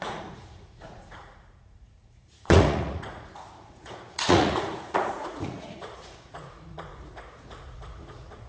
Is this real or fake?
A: fake